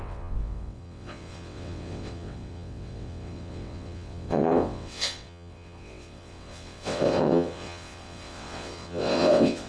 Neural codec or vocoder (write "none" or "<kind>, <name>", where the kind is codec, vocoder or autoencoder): vocoder, WaveNeXt